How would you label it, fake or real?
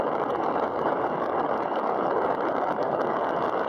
fake